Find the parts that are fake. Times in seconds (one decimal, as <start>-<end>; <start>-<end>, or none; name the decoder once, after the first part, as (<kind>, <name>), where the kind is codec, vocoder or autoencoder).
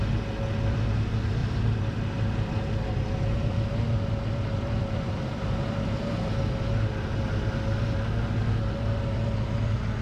1.4-6.1 (vocoder, BigVGAN v2)